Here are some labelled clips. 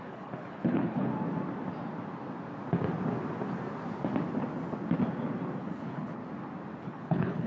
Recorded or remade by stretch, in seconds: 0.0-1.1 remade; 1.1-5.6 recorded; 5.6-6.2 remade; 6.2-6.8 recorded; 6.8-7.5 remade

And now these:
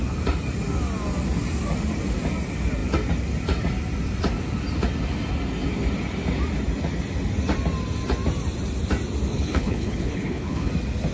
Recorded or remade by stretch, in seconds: 0.0-9.3 recorded; 9.3-10.7 remade; 10.7-11.1 recorded

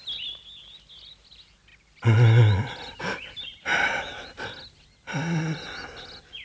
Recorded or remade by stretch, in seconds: 0.0-6.4 recorded

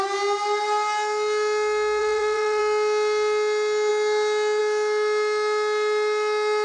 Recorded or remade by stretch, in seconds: 0.0-2.0 recorded; 2.0-2.6 remade; 2.6-6.6 recorded

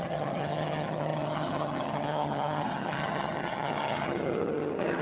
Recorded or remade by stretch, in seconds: 0.0-5.0 remade

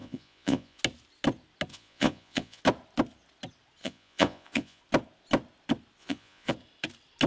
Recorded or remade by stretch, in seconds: 0.0-0.8 remade; 0.8-1.7 recorded; 1.7-2.6 remade; 2.6-3.8 recorded; 3.8-4.8 remade; 4.8-6.0 recorded; 6.0-6.5 remade; 6.5-7.3 recorded

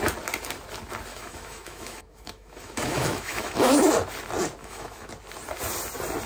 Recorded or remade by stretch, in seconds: 0.0-1.1 recorded; 1.1-3.9 remade; 3.9-4.6 recorded; 4.6-5.1 remade; 5.1-6.3 recorded

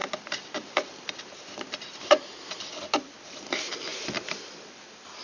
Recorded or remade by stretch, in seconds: 0.0-2.1 remade; 2.1-3.9 recorded; 3.9-4.6 remade; 4.6-5.2 recorded